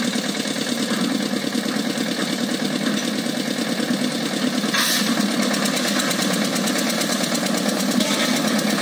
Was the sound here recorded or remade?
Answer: recorded